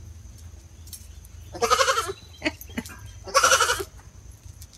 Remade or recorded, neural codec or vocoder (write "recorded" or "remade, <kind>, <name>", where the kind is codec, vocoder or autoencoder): recorded